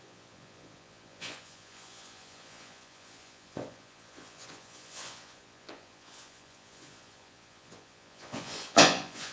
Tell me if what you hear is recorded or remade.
remade